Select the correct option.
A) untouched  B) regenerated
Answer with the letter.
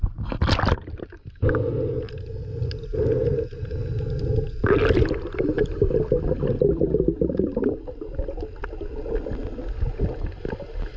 A